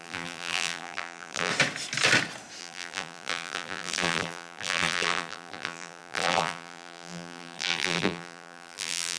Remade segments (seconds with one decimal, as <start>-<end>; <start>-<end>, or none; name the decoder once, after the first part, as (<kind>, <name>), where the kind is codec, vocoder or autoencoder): 0.0-1.5 (vocoder, BigVGAN v2); 2.6-9.2